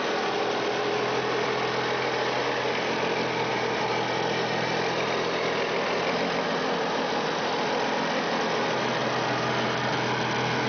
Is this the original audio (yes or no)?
yes